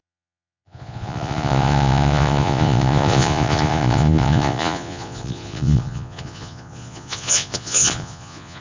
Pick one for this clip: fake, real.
fake